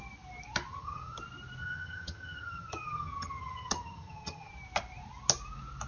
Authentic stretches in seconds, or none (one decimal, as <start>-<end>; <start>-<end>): 0.0-0.7; 1.2-1.6; 4.5-5.9